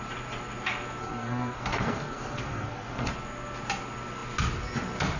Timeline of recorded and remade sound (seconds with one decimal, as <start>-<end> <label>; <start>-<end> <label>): 0.0-1.0 recorded; 1.0-3.1 remade; 3.1-5.2 recorded